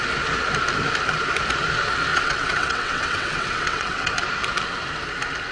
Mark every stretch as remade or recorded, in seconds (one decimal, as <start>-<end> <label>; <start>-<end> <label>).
0.0-2.1 recorded; 2.1-4.1 remade; 4.1-5.5 recorded